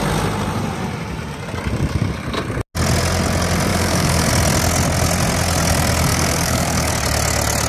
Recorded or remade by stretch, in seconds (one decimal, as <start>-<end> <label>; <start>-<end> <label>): 0.0-3.7 recorded; 3.7-4.3 remade; 4.3-6.1 recorded; 6.1-6.9 remade; 6.9-7.7 recorded